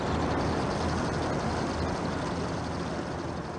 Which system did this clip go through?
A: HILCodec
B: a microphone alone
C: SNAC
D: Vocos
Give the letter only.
B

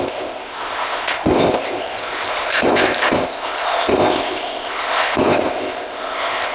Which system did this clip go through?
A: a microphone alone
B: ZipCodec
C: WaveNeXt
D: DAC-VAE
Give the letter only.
B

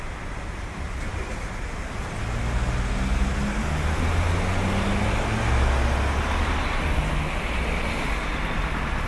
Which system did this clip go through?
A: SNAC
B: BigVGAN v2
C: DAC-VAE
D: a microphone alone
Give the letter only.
D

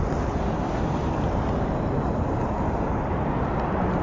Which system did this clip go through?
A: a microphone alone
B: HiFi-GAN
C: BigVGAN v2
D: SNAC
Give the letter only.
A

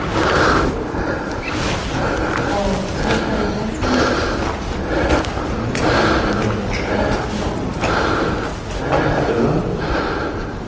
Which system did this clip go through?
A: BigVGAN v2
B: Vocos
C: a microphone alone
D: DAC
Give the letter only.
C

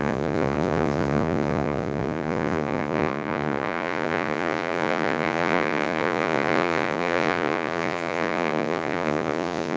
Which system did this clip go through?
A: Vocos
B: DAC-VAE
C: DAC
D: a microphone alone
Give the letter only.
A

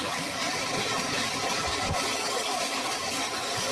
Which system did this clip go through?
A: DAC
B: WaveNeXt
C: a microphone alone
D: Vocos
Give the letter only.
A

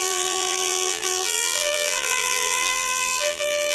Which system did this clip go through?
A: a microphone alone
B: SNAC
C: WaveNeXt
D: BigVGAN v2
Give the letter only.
D